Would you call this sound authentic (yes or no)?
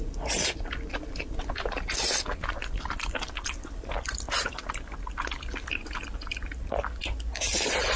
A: yes